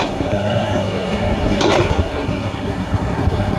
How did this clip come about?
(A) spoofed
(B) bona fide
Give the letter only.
A